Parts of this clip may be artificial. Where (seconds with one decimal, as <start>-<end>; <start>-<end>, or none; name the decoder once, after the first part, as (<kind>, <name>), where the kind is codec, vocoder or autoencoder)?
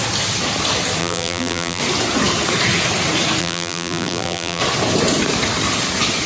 1.0-1.8 (vocoder, BigVGAN v2); 3.4-4.6